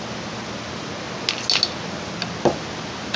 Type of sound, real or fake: real